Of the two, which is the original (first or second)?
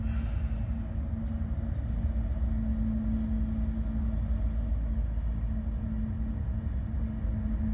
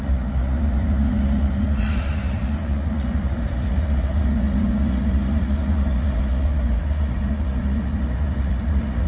first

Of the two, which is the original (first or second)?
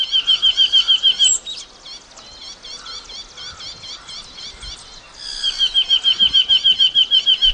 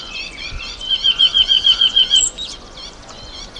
first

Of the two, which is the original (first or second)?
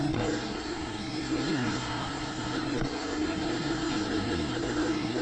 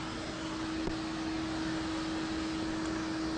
second